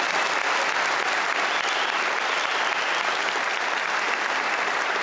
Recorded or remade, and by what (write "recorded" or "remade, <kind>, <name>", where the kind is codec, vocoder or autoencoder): recorded